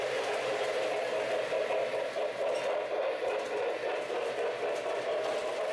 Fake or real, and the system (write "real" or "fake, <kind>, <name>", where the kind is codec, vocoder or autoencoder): real